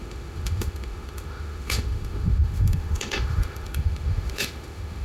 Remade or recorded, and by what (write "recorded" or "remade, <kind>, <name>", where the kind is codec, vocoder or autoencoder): remade, autoencoder, DAC-VAE